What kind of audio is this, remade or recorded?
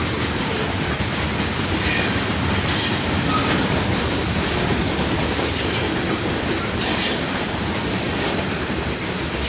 remade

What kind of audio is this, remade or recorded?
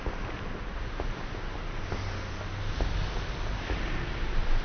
recorded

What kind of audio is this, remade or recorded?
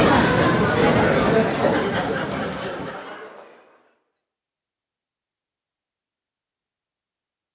recorded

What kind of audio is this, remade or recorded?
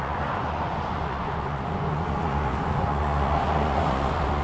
remade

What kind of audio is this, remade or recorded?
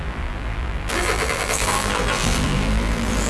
remade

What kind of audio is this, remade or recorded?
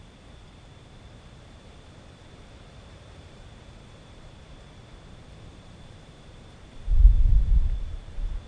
remade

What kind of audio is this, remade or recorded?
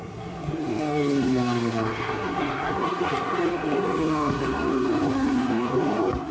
remade